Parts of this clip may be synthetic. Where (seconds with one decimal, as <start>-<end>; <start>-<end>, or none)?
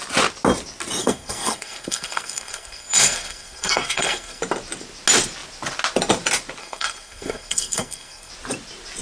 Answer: 1.0-4.4; 6.6-8.3